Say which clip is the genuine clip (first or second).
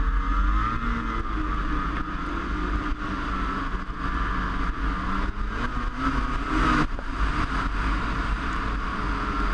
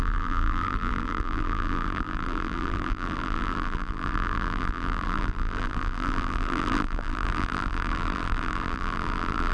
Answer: first